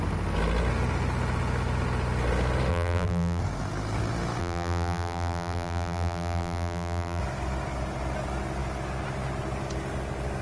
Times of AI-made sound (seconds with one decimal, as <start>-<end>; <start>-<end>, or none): 2.7-3.4; 4.4-7.2